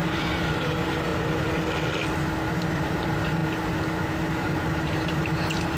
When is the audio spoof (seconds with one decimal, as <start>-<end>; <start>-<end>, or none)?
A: 0.0-1.1; 2.7-3.4; 4.3-5.8